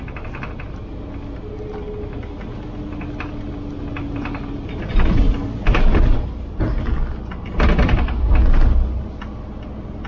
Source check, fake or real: real